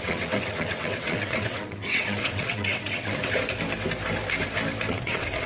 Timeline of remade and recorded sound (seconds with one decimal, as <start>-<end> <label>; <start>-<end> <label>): 0.0-3.2 remade; 3.2-4.9 recorded; 4.9-5.5 remade